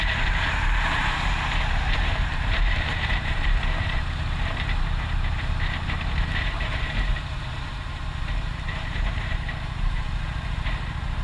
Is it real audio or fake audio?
fake